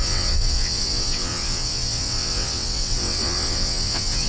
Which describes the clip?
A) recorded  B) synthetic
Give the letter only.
B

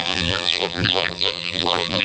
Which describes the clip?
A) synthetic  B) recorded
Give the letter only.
A